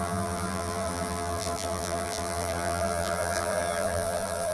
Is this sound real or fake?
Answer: fake